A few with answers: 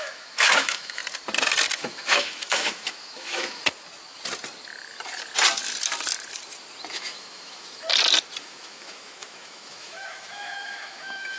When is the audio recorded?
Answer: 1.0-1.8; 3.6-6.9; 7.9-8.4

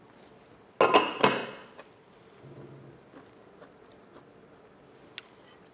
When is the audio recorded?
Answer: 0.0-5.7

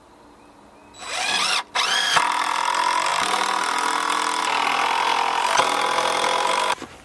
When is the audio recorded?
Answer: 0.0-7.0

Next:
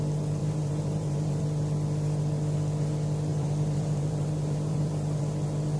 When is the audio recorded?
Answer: 0.0-0.4; 1.4-3.3; 5.2-5.8